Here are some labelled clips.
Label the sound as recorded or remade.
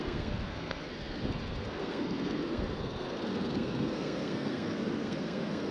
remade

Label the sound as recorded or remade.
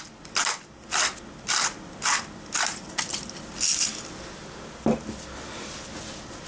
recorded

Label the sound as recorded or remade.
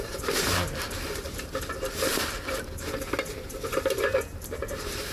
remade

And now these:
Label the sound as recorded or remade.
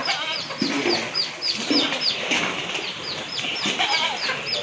recorded